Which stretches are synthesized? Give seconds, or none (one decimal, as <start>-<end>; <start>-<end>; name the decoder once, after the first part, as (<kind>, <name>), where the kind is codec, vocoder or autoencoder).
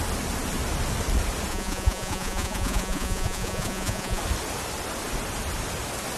1.5-4.2 (vocoder, Vocos)